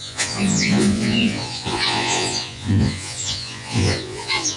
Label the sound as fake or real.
fake